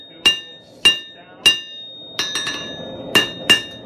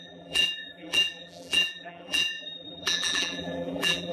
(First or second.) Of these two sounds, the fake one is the second